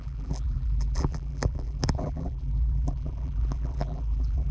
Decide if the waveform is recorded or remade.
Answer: remade